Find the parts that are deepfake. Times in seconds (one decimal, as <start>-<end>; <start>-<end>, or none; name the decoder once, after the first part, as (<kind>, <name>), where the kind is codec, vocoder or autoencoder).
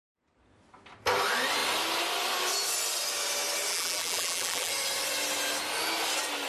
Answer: 3.7-4.7 (vocoder, BigVGAN v2)